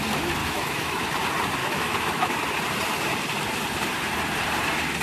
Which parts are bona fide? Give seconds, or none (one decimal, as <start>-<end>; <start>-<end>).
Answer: 0.0-0.4; 1.1-1.6; 2.3-5.0